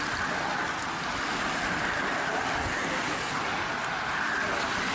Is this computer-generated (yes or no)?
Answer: no